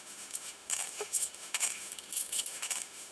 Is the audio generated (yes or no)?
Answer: yes